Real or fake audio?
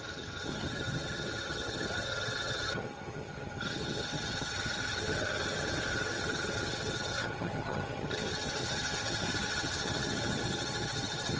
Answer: fake